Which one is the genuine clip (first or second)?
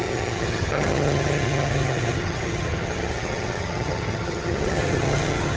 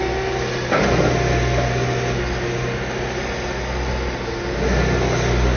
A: second